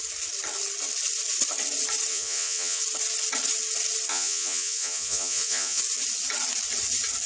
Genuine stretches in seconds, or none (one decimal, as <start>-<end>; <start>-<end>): 0.0-2.1; 2.8-4.1; 5.8-7.3